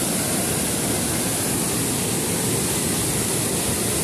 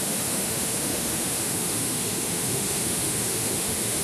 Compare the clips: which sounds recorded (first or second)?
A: first